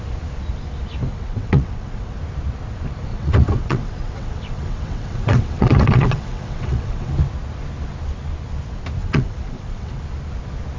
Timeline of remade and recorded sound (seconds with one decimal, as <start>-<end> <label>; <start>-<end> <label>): 0.0-1.1 recorded; 1.1-2.2 remade; 2.2-3.1 recorded; 3.1-7.1 remade; 7.1-9.0 recorded; 9.0-10.0 remade; 10.0-10.8 recorded